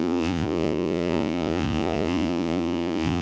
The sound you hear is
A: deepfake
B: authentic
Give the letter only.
A